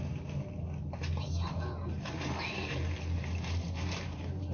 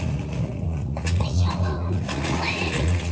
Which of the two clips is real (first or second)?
first